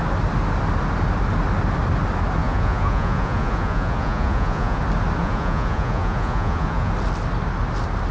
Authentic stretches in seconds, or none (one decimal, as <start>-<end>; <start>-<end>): 0.0-2.4; 4.8-5.2; 6.9-8.1